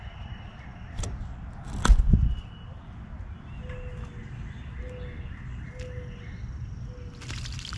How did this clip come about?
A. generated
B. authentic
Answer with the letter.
B